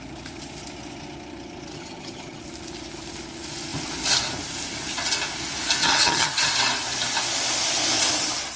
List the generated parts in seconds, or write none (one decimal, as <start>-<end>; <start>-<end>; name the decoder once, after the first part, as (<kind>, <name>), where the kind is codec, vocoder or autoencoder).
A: 1.7-2.4 (vocoder, HiFi-GAN); 5.8-6.5